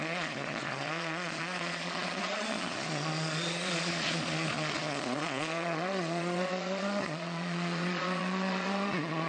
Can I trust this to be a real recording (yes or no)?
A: no